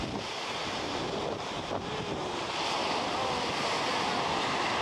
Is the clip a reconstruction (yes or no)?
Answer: yes